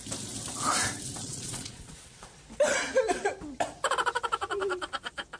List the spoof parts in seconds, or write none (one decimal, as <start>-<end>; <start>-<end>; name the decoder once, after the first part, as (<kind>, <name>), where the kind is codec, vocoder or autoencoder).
1.2-2.4 (vocoder, Vocos)